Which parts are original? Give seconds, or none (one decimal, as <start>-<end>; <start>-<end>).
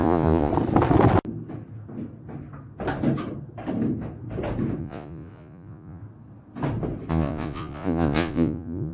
0.5-4.8; 6.0-7.1